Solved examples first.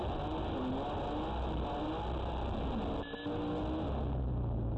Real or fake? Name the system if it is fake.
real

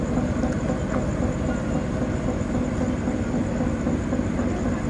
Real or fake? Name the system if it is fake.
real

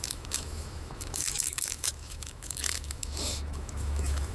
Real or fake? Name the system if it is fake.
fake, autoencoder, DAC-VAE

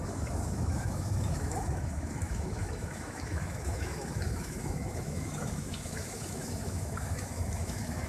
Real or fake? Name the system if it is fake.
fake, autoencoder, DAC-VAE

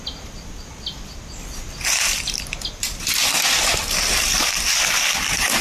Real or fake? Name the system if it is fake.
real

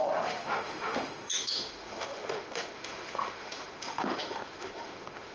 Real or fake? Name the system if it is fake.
fake, autoencoder, DAC-VAE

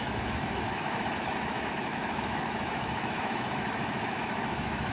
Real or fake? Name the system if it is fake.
fake, autoencoder, DAC-VAE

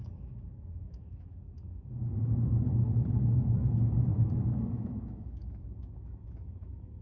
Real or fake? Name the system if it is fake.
fake, autoencoder, DAC-VAE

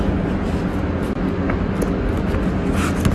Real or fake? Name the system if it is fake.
real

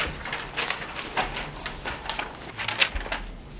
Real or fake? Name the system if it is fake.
real